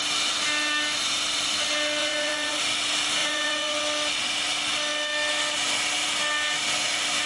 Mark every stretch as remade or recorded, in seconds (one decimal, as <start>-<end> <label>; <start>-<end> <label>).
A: 0.0-2.0 recorded; 2.0-2.6 remade; 2.6-3.2 recorded; 3.2-3.8 remade; 3.8-7.3 recorded